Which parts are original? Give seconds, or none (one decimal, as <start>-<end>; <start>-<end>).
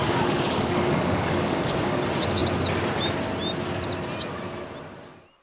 2.0-5.4